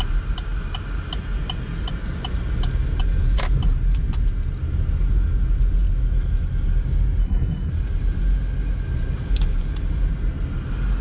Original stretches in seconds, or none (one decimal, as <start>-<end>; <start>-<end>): 0.0-7.2; 7.7-11.0